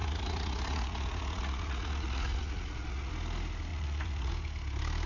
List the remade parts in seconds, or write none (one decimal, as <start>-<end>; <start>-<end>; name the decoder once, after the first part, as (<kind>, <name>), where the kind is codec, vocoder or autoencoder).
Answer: 0.0-3.1 (vocoder, Vocos); 3.7-4.3